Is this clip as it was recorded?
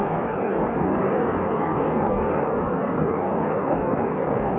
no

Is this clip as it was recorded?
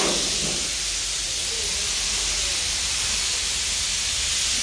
yes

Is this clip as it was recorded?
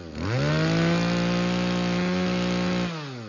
yes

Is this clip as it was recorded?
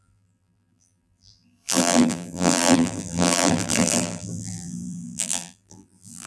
no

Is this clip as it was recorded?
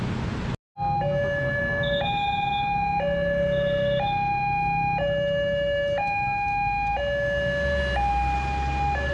yes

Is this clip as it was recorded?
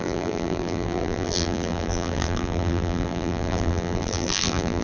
no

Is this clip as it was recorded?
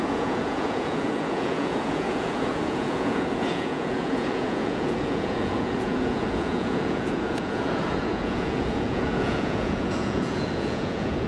no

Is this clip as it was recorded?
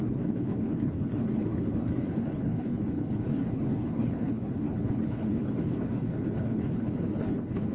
no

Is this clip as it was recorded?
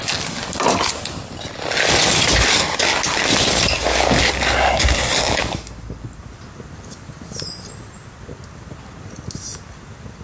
yes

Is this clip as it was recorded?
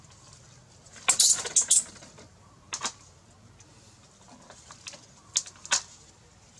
yes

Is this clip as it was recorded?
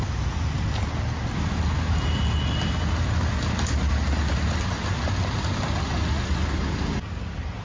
yes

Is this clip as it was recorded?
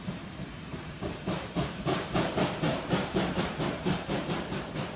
no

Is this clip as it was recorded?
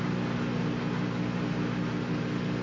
yes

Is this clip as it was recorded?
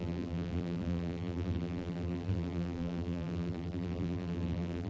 no